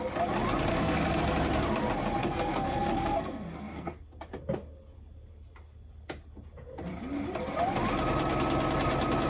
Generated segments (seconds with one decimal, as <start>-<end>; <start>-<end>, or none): 0.7-1.2; 2.2-3.9